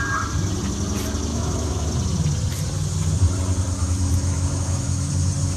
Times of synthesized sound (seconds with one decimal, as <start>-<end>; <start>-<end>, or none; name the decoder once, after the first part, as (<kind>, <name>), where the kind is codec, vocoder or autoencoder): 1.3-1.9 (autoencoder, DAC-VAE); 3.8-5.1